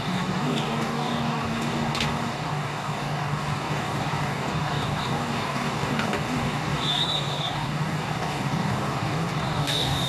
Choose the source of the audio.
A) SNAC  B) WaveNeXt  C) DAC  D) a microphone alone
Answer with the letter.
C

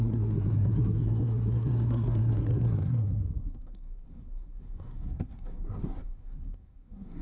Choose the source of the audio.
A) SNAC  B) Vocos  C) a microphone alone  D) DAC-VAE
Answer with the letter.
A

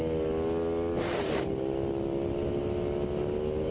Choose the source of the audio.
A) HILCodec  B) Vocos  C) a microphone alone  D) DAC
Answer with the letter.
C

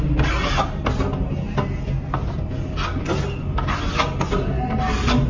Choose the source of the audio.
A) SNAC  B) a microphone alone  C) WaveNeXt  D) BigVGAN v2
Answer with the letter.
B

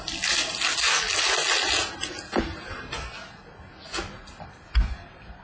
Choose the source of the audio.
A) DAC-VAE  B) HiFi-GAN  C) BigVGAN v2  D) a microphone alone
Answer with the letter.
D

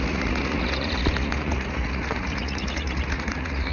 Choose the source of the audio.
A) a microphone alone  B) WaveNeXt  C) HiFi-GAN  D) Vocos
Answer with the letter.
D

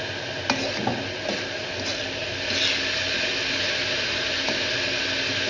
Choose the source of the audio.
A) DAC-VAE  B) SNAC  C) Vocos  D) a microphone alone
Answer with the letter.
D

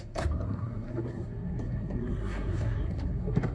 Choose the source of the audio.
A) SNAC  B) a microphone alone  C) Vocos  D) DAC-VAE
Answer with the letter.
A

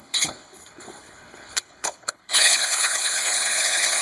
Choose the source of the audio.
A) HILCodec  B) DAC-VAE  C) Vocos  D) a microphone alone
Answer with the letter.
A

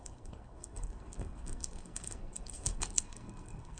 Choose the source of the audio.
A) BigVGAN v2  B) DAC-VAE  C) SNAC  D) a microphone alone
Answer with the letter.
C